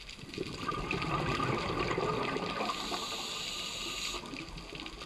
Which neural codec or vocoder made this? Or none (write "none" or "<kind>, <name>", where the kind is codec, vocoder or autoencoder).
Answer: none